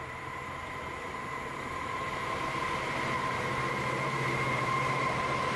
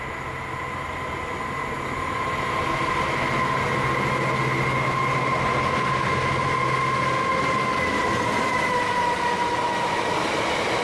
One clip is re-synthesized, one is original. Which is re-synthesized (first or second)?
first